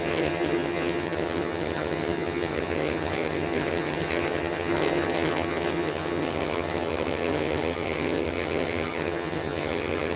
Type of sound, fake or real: fake